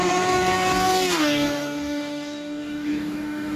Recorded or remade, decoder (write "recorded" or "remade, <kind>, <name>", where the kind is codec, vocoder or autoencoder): remade, codec, DAC